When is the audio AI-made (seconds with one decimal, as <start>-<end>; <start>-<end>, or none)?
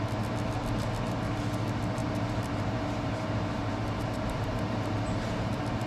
2.0-5.5